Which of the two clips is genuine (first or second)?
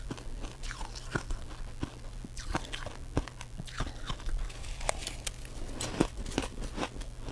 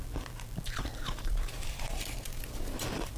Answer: first